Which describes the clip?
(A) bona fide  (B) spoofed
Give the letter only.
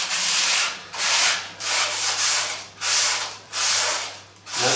B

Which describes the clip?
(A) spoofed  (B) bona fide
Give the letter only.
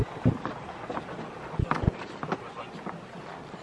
B